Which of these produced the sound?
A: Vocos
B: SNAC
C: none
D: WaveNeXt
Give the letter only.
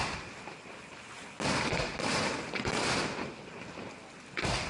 C